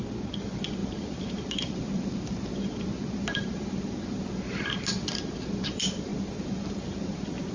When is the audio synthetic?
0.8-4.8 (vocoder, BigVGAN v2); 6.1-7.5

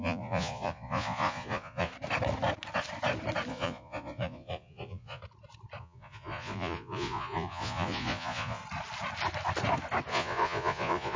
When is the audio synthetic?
0.0-1.9 (vocoder, Vocos); 3.5-5.2; 5.8-8.6; 10.1-11.2

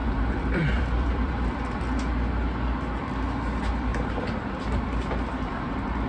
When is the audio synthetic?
0.0-1.3 (vocoder, BigVGAN v2)

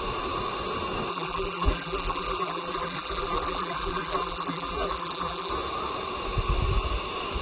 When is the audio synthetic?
1.1-5.5 (vocoder, BigVGAN v2)

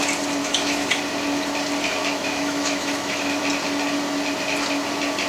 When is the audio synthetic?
0.4-1.0 (autoencoder, DAC-VAE); 2.0-3.4

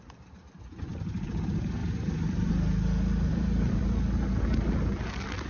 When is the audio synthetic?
1.8-2.5 (vocoder, BigVGAN v2); 3.3-3.8

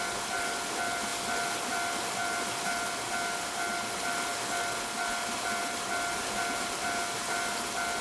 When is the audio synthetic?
none